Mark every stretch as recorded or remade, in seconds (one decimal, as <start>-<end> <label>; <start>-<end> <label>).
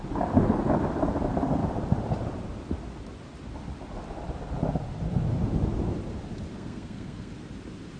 0.0-6.5 recorded; 6.5-7.3 remade; 7.3-8.0 recorded